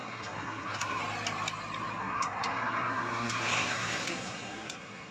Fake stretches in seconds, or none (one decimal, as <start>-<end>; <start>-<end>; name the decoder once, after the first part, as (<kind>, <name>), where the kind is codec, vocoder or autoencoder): 0.0-1.0 (codec, SNAC); 2.0-5.1